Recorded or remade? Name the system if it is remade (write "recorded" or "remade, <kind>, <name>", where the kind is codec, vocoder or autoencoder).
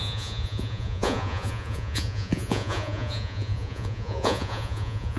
remade, vocoder, Vocos